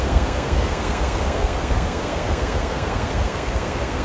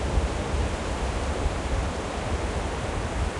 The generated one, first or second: first